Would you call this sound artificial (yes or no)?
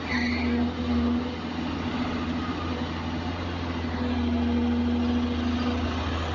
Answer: no